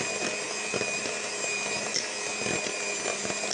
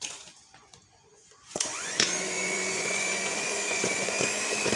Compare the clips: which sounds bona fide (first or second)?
first